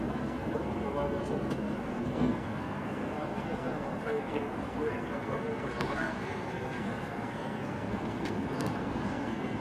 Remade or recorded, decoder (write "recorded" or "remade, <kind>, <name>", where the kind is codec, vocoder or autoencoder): remade, codec, SNAC